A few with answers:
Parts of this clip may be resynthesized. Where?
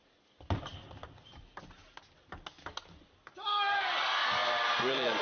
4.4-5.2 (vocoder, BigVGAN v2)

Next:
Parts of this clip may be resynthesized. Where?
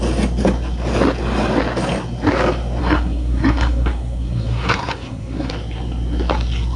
2.8-5.5 (codec, SNAC)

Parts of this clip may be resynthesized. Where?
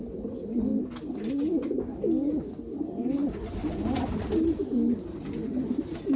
none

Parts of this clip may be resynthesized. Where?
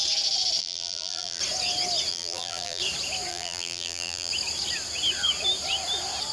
0.6-1.4 (vocoder, BigVGAN v2); 2.1-2.8; 3.3-4.3